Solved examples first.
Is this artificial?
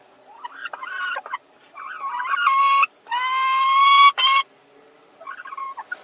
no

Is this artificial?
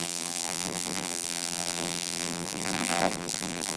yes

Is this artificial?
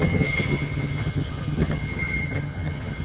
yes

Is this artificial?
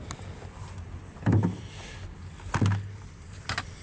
no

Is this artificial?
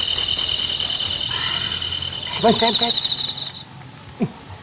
no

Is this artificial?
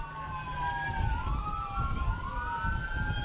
no